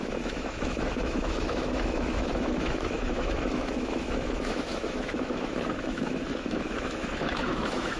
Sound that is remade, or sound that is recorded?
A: remade